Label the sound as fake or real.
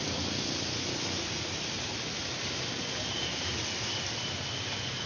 real